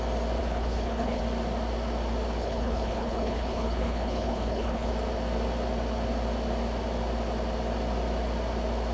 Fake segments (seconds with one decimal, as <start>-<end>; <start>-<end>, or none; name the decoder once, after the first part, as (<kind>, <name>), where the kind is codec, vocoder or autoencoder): 0.4-1.2 (codec, HILCodec); 2.4-4.9